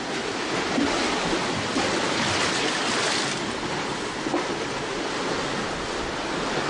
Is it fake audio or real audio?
real